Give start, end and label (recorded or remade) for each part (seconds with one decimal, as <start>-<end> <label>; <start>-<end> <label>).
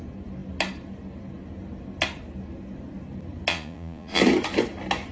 0.0-3.5 recorded; 3.5-4.2 remade; 4.2-5.1 recorded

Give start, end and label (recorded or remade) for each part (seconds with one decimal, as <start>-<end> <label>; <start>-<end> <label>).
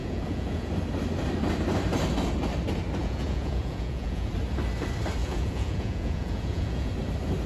0.0-0.7 remade; 0.7-3.0 recorded; 3.0-4.3 remade; 4.3-5.2 recorded; 5.2-6.9 remade; 6.9-7.5 recorded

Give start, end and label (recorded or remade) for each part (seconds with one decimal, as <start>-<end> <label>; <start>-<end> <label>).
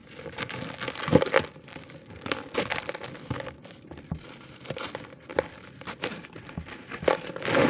0.0-7.7 recorded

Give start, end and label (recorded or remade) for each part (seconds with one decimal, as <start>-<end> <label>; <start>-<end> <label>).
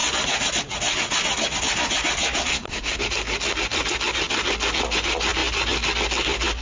0.0-2.5 recorded; 2.5-3.0 remade; 3.0-6.6 recorded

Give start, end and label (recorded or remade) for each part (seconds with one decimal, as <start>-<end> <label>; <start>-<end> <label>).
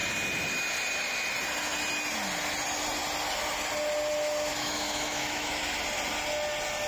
0.0-4.5 recorded; 4.5-5.6 remade; 5.6-6.9 recorded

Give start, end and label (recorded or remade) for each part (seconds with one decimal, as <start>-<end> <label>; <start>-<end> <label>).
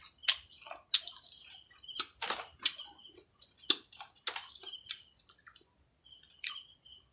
0.0-4.3 recorded; 4.3-7.1 remade